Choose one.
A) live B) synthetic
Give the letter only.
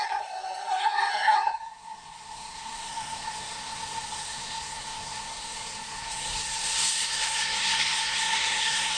B